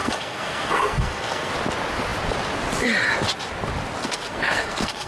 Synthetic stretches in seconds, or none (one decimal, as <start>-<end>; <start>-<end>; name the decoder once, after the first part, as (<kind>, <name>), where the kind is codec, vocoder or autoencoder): 0.0-1.5 (codec, SNAC); 4.0-5.1